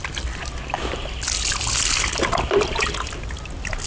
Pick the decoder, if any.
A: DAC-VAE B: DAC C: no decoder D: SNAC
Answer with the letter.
C